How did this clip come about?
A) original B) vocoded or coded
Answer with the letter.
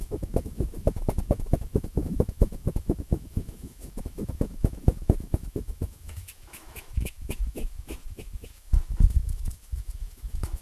B